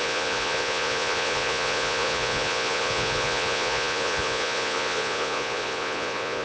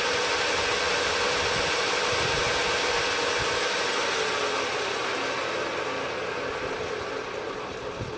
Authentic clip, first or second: second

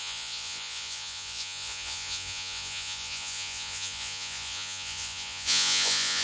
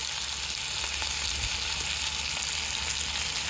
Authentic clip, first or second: second